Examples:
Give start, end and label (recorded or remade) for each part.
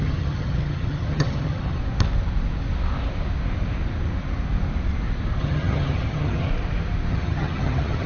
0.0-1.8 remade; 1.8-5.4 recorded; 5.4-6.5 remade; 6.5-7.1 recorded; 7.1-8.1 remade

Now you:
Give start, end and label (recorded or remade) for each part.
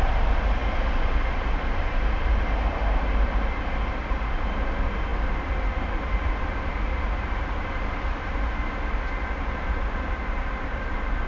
0.0-11.3 recorded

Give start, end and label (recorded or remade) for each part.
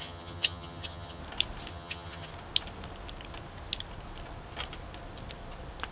0.0-1.2 remade; 1.2-1.7 recorded; 1.7-2.3 remade; 2.3-5.9 recorded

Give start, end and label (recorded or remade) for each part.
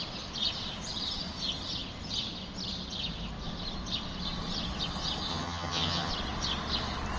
0.0-5.3 recorded; 5.3-6.1 remade; 6.1-7.2 recorded